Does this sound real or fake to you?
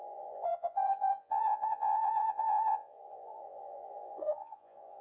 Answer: fake